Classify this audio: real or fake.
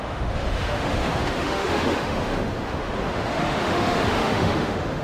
fake